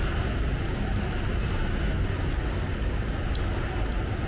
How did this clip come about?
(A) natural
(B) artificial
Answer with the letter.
A